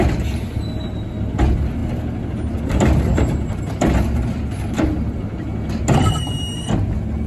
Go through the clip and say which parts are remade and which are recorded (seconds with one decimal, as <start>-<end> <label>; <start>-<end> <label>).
0.0-7.3 recorded